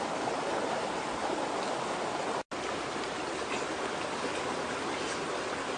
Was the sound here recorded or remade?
recorded